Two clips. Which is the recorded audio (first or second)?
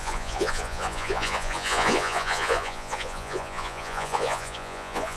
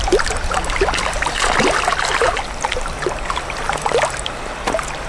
second